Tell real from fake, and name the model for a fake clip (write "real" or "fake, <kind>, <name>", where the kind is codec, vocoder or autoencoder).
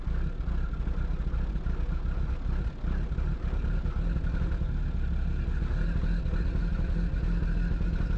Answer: real